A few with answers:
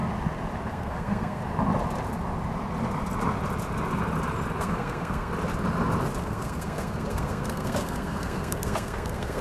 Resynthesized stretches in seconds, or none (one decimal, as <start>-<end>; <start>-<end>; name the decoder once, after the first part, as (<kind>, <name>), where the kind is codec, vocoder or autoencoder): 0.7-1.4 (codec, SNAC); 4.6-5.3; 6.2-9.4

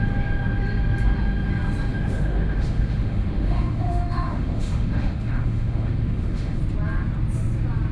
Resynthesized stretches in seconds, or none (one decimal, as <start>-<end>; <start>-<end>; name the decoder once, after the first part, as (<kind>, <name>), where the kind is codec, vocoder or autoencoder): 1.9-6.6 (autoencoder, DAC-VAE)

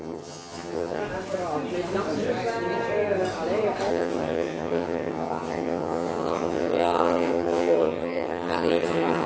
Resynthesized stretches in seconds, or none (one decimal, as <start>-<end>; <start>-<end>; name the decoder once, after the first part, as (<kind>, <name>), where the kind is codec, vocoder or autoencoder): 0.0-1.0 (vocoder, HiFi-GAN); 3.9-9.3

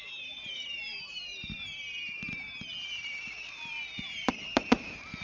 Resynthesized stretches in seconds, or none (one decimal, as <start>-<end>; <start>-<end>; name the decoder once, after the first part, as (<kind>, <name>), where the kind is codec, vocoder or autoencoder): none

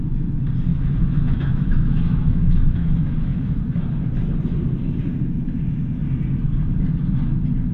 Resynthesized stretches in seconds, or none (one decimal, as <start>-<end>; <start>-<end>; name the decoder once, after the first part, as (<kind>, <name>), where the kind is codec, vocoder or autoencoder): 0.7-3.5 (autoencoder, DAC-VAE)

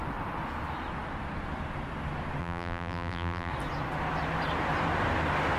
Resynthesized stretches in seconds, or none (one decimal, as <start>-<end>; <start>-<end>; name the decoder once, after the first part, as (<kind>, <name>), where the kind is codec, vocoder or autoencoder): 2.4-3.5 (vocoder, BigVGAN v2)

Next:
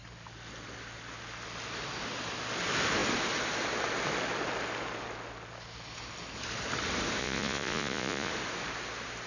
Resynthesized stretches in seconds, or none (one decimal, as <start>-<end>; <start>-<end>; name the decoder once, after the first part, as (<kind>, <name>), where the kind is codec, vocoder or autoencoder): 7.2-8.3 (vocoder, Vocos)